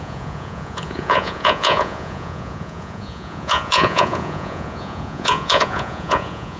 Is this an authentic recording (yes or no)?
no